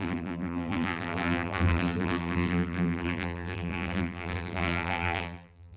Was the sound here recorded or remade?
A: remade